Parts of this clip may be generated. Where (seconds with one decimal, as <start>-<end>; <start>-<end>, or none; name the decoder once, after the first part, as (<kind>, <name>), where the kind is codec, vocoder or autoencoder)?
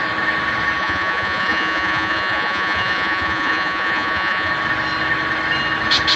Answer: 0.8-4.5 (vocoder, Vocos)